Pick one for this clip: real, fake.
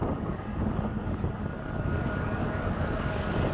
fake